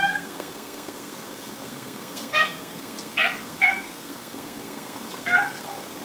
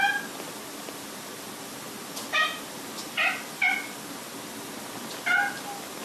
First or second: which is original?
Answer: second